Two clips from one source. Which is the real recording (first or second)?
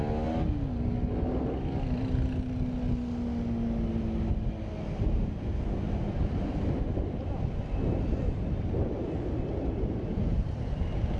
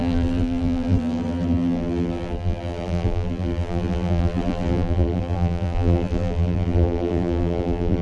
first